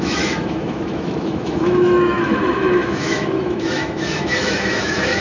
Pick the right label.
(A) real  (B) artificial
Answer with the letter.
B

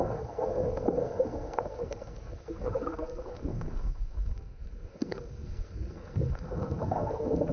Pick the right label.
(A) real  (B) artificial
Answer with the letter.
B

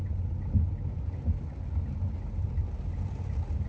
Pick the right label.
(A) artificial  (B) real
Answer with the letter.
B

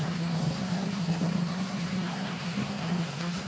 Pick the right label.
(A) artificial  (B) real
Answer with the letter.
A